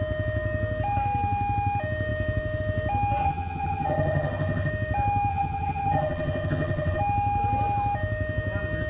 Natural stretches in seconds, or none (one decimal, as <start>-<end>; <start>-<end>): 0.0-3.2; 4.7-5.3; 7.0-8.9